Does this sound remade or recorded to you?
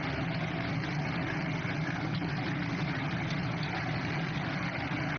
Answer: recorded